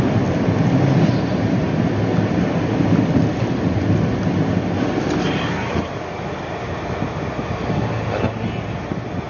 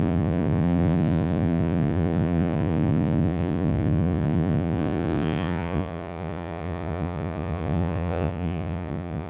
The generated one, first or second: second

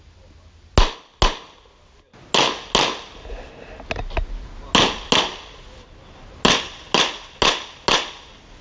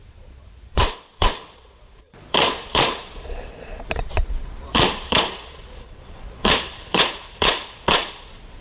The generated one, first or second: second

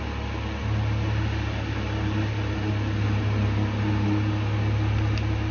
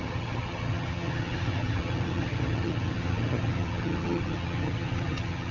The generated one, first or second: second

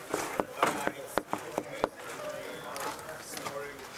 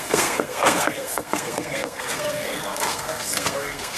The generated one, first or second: second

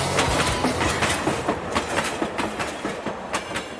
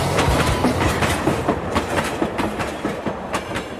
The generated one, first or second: second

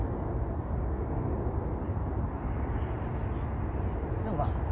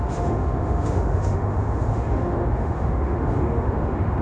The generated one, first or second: second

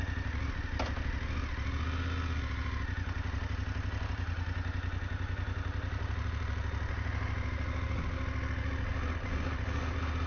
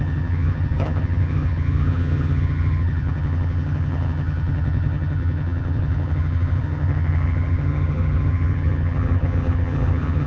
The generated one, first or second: second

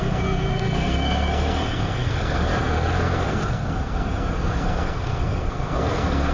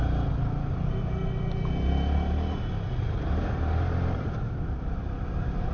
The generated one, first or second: first